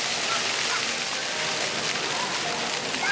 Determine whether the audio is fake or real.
real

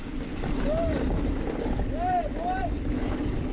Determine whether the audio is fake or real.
real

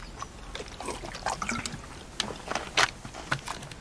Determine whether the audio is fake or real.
real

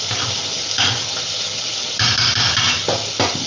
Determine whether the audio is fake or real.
real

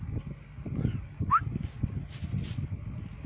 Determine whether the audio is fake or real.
real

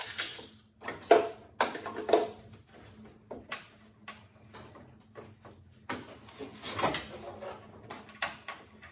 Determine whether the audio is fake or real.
real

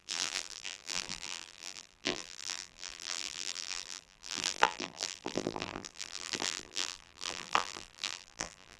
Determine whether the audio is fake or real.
fake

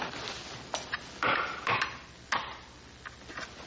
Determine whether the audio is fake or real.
real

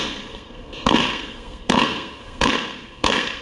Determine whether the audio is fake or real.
fake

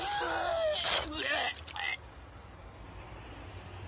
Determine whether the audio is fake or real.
real